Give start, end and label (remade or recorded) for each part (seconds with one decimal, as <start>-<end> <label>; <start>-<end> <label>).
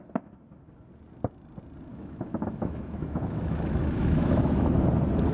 0.0-1.9 recorded; 1.9-4.7 remade; 4.7-5.3 recorded